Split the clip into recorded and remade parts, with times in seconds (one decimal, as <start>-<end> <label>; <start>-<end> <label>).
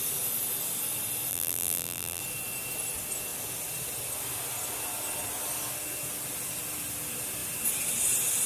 0.0-1.3 recorded; 1.3-2.2 remade; 2.2-8.5 recorded